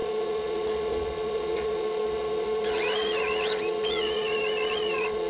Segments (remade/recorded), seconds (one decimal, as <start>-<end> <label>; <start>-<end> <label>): 0.0-5.3 remade